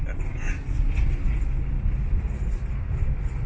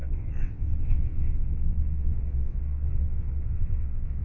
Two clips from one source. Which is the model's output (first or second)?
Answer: second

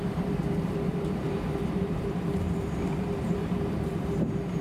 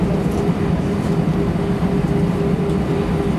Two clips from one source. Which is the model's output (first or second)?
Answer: first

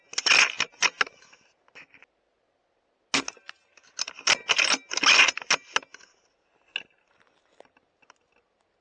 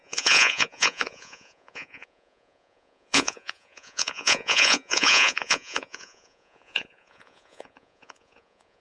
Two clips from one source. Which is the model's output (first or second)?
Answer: second